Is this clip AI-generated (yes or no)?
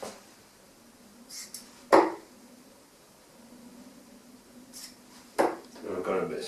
no